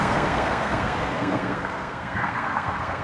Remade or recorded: remade